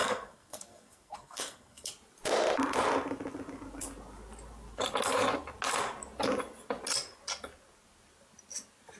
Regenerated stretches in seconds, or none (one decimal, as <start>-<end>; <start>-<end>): 0.0-1.9